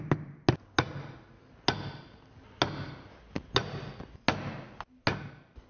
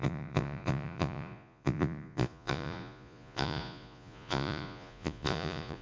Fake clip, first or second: second